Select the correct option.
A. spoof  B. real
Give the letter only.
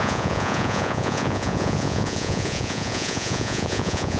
A